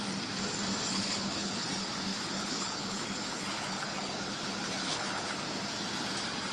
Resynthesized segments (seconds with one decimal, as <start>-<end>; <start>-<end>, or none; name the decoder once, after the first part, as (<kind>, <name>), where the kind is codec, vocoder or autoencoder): 0.9-1.7 (codec, HILCodec); 2.1-5.4